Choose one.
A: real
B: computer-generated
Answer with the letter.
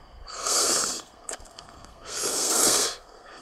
B